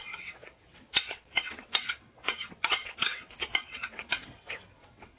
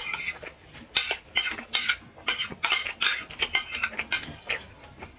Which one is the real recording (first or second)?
second